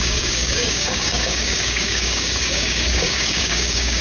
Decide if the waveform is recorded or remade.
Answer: remade